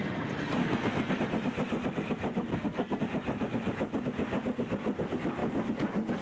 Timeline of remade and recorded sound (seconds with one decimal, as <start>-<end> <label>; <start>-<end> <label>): 0.0-0.6 recorded; 0.6-1.2 remade; 1.2-2.5 recorded; 2.5-3.0 remade; 3.0-6.2 recorded